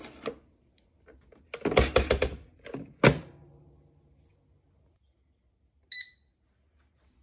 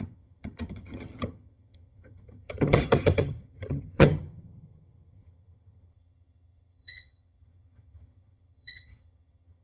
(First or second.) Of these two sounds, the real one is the first